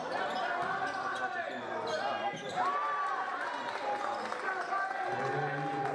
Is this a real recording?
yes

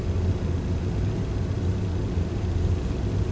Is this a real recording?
yes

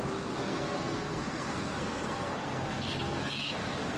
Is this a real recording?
no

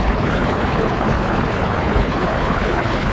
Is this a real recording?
no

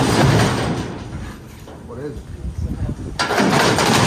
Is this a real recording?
no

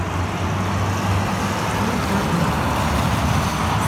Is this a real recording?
yes